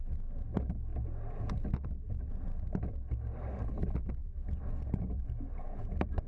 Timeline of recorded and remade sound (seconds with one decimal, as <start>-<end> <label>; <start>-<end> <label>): 0.0-4.2 recorded; 4.2-6.3 remade